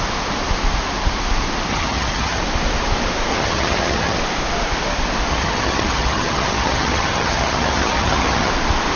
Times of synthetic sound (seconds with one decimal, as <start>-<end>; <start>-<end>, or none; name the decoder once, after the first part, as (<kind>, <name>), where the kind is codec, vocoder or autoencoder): 1.7-2.4 (vocoder, HiFi-GAN); 3.3-4.2; 5.3-8.5